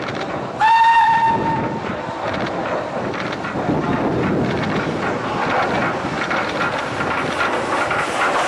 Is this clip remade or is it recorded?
recorded